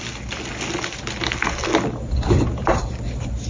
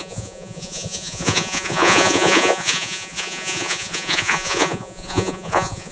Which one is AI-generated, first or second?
second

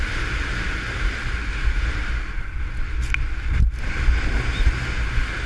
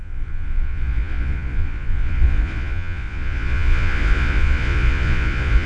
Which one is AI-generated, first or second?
second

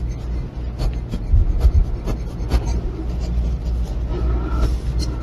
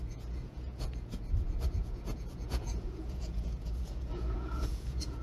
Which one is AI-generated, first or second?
second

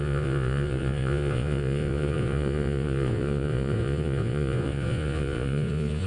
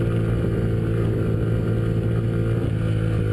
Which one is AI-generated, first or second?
first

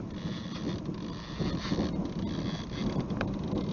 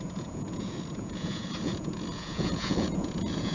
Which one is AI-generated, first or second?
second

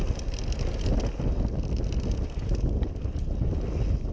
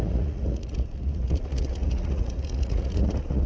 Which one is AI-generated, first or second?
second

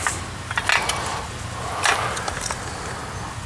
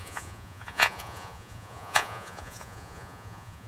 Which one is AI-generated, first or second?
second